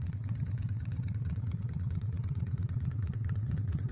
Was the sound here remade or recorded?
remade